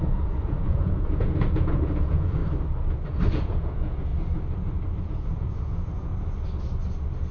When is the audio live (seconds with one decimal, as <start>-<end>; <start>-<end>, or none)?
2.4-3.3; 4.1-5.0; 6.1-7.3